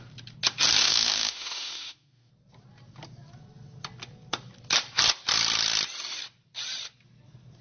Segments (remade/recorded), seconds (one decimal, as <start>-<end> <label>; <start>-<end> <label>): 0.0-0.8 recorded; 0.8-2.3 remade; 2.3-7.6 recorded